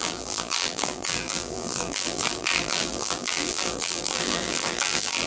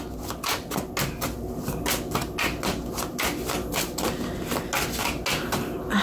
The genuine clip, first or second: second